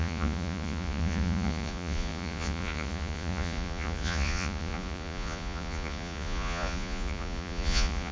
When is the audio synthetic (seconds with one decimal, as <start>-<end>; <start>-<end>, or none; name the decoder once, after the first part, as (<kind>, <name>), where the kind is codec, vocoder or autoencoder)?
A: 0.0-8.1 (vocoder, Vocos)